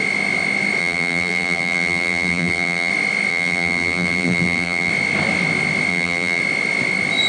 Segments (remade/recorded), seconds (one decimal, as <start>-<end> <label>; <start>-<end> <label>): 0.0-0.8 recorded; 0.8-2.9 remade; 2.9-3.3 recorded; 3.3-4.9 remade; 4.9-5.9 recorded; 5.9-6.4 remade; 6.4-7.3 recorded